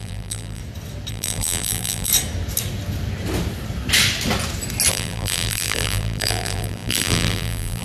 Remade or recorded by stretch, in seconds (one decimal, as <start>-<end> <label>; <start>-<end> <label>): 0.0-0.6 remade; 0.6-1.1 recorded; 1.1-2.1 remade; 2.1-4.9 recorded; 4.9-7.8 remade